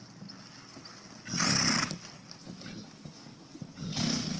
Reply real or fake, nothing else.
real